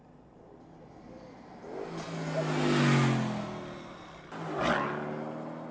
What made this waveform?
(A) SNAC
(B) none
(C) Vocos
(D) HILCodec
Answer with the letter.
B